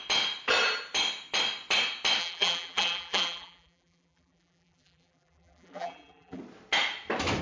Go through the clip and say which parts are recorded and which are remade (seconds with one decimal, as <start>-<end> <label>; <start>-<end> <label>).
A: 0.0-2.2 recorded; 2.2-6.4 remade; 6.4-7.4 recorded